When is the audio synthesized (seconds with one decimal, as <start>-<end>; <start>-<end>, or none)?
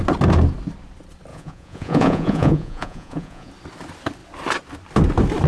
1.3-3.5